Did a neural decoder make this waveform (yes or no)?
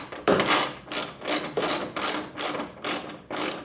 yes